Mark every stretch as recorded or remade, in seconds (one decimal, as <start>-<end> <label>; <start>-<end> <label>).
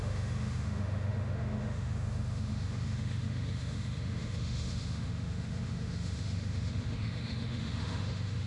0.0-8.5 remade